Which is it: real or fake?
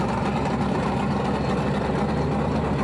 real